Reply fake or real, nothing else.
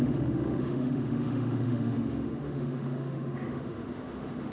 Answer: fake